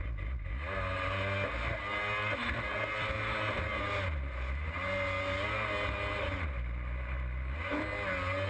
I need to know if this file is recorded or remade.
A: recorded